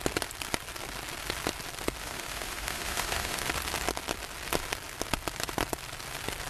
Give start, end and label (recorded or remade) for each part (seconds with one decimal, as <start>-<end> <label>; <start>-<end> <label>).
0.0-2.0 recorded; 2.0-3.5 remade; 3.5-6.5 recorded